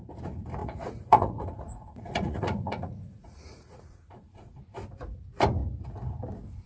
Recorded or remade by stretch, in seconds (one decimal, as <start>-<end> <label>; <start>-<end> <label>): 0.0-0.6 recorded; 0.6-4.6 remade; 4.6-6.7 recorded